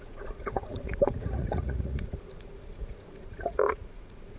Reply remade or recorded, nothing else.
remade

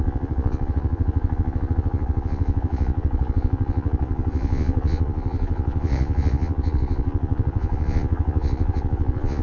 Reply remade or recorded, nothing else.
remade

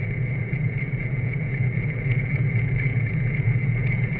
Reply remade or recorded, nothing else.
remade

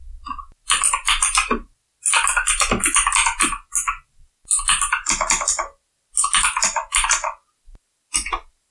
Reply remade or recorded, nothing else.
recorded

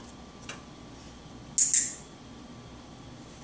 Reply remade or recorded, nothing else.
recorded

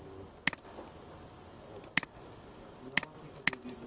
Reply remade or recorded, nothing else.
recorded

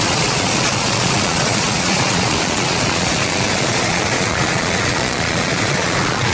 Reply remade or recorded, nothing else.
remade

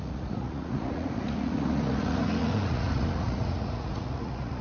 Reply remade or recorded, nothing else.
remade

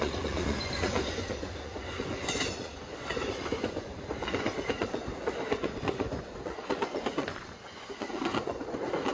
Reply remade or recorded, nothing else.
remade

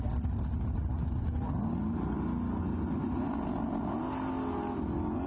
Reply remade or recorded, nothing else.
recorded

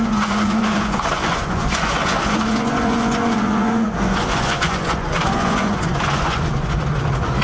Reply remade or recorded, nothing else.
remade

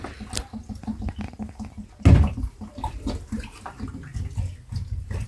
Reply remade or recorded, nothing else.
recorded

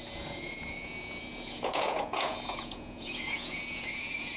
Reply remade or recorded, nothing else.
remade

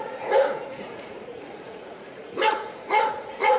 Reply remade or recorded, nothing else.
remade